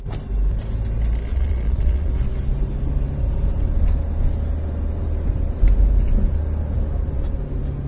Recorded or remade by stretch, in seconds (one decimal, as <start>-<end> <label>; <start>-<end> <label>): 0.0-1.3 recorded; 1.3-2.1 remade; 2.1-7.9 recorded